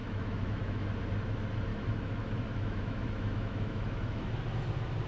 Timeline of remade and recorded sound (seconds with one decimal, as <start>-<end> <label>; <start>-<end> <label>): 0.0-0.8 remade; 0.8-1.7 recorded; 1.7-4.3 remade; 4.3-5.1 recorded